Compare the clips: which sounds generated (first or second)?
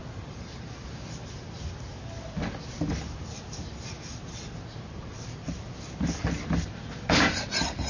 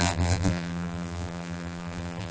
second